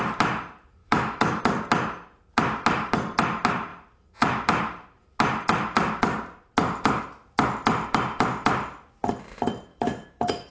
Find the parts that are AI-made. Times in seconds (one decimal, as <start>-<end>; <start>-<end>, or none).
0.8-1.4; 9.7-10.5